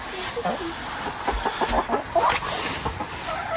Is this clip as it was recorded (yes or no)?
yes